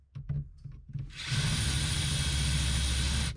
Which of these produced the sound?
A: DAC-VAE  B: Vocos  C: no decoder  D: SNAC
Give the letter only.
C